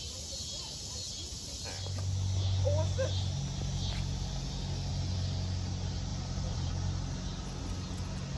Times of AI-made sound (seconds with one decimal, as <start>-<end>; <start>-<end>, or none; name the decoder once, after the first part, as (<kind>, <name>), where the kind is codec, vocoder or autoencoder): 6.1-6.7 (vocoder, BigVGAN v2)